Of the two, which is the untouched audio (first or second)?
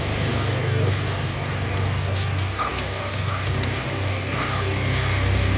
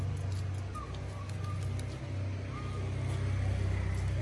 second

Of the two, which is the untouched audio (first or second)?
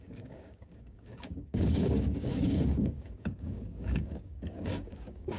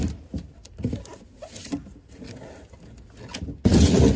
second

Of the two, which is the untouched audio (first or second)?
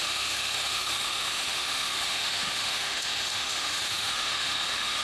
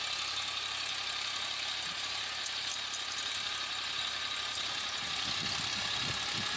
second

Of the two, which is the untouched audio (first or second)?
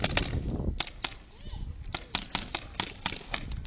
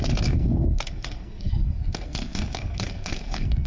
first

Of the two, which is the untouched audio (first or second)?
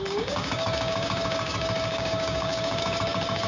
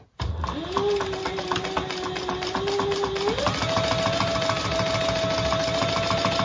second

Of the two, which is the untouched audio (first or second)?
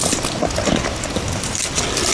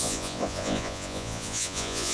first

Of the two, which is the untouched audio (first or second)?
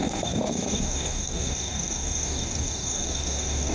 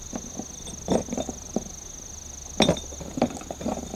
second